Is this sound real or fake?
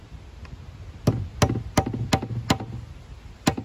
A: real